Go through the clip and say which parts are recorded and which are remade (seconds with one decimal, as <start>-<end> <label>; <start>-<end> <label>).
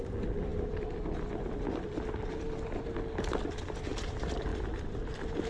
0.0-5.5 recorded